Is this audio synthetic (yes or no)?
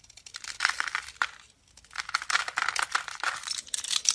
no